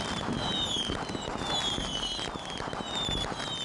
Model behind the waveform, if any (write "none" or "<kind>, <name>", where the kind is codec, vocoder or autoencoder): none